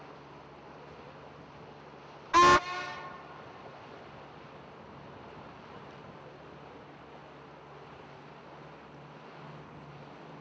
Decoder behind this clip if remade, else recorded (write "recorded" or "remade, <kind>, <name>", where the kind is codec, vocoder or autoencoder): recorded